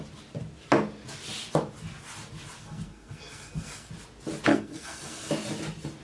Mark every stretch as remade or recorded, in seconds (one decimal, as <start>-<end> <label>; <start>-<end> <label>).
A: 0.0-2.6 recorded; 2.6-3.9 remade; 3.9-4.5 recorded; 4.5-5.3 remade; 5.3-6.0 recorded